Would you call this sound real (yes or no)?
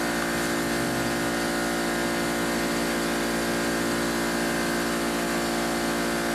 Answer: yes